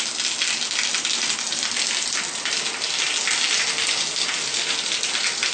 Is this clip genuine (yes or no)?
yes